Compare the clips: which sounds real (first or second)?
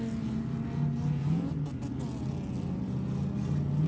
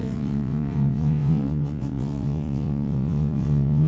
first